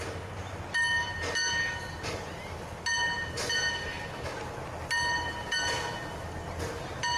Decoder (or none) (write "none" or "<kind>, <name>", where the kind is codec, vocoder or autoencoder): none